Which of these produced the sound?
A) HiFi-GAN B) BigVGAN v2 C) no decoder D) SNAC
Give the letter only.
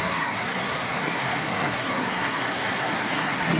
D